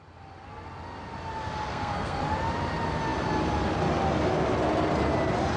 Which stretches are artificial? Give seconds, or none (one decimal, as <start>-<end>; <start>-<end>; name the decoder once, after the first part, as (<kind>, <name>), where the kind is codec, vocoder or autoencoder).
1.7-2.2 (codec, SNAC)